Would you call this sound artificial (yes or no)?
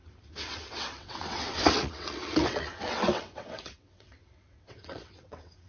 yes